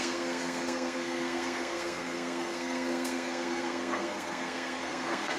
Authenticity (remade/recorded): remade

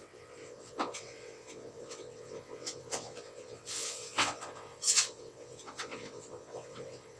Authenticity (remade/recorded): remade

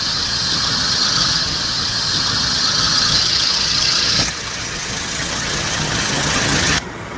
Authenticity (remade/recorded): remade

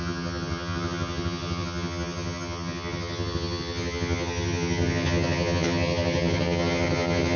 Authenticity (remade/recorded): remade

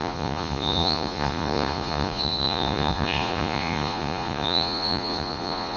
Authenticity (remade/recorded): remade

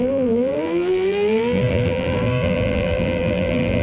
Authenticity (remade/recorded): remade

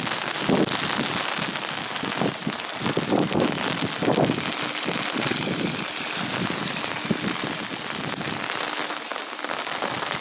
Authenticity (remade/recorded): recorded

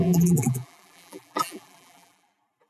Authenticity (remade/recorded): remade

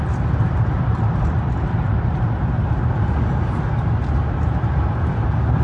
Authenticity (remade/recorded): recorded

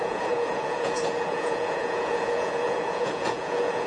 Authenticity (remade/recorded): remade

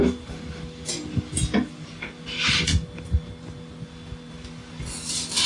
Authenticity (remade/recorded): recorded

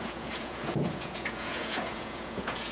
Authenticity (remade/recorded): remade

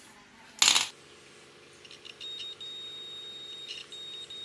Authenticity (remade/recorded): recorded